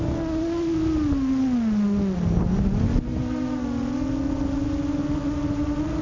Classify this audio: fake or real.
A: real